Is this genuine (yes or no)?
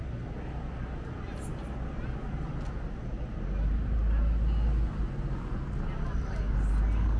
yes